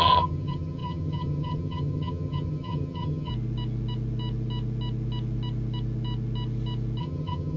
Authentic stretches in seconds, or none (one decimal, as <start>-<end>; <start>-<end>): 3.3-7.0